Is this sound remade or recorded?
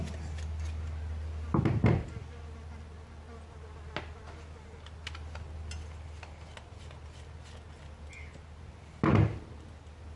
recorded